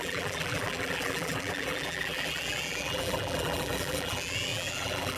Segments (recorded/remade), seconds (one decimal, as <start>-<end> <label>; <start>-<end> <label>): 0.0-5.2 remade